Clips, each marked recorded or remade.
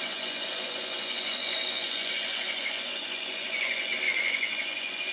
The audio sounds remade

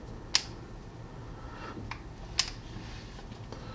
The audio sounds recorded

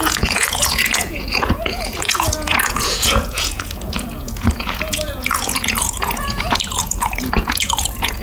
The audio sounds remade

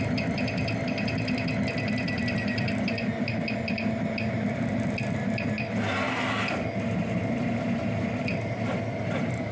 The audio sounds recorded